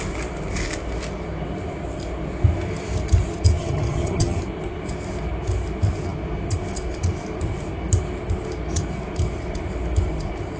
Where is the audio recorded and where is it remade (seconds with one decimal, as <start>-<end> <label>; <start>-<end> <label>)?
0.0-3.6 recorded; 3.6-4.4 remade; 4.4-10.6 recorded